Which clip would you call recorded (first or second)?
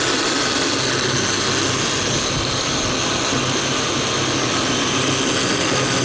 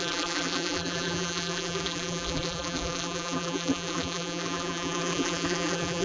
first